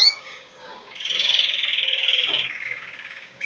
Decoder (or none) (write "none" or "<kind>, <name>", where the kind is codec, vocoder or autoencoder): codec, DAC